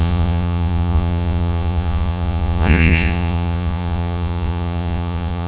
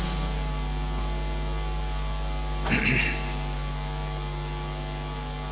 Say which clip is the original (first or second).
second